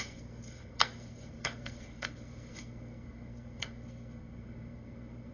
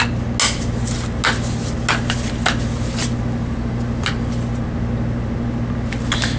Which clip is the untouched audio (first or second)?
second